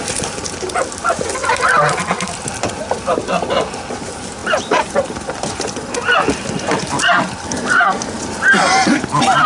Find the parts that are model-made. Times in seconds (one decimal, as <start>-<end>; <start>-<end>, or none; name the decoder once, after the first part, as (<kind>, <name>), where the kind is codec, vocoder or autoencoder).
none